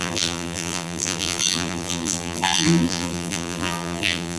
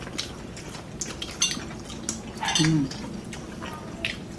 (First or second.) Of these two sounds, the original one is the second